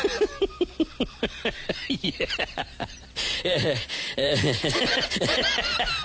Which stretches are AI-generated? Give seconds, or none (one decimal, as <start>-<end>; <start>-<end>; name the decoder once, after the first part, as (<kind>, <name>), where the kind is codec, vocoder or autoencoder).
1.8-4.4 (vocoder, BigVGAN v2)